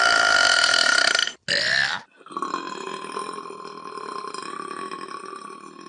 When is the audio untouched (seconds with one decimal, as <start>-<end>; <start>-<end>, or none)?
0.0-5.9